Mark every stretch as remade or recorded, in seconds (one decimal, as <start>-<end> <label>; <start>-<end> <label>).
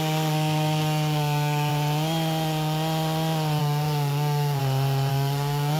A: 0.0-1.7 remade; 1.7-3.6 recorded; 3.6-4.6 remade; 4.6-5.1 recorded; 5.1-5.8 remade